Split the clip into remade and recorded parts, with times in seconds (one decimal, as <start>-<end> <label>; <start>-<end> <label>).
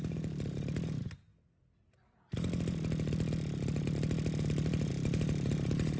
0.0-6.0 recorded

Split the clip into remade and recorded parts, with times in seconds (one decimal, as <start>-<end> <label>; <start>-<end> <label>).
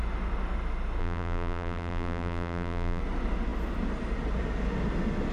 0.0-1.0 recorded; 1.0-3.0 remade; 3.0-5.3 recorded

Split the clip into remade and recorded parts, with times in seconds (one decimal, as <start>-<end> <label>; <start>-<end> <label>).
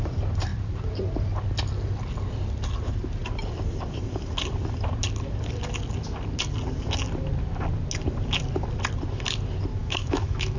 0.0-9.8 recorded; 9.8-10.6 remade